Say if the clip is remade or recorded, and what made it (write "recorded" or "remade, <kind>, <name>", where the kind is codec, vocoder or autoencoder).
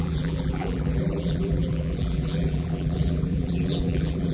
remade, vocoder, BigVGAN v2